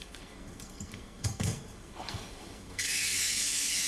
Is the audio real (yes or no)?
no